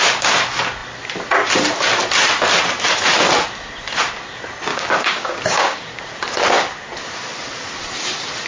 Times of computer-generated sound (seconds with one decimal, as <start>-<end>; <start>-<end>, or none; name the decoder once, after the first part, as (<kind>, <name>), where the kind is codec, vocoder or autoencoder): 4.7-6.0 (codec, DAC)